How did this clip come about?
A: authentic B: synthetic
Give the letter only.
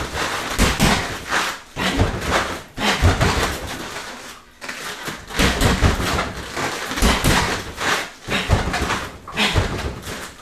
A